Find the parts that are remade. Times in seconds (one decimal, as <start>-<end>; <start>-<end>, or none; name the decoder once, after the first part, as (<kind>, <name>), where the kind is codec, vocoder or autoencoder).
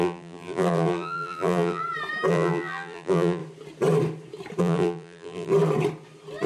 0.0-1.8 (vocoder, BigVGAN v2); 2.3-3.4; 4.6-5.5